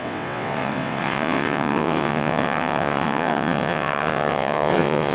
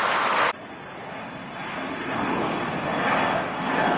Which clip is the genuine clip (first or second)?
second